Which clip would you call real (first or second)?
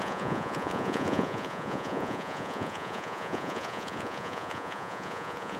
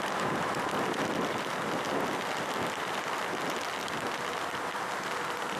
second